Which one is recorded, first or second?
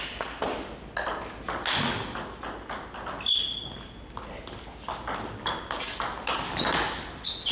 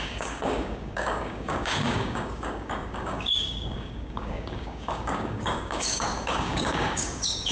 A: first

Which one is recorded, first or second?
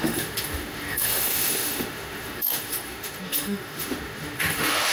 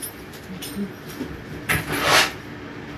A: second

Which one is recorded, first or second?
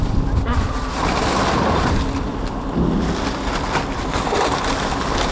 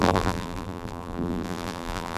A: first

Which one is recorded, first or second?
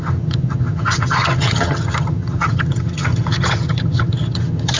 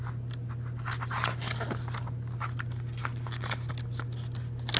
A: second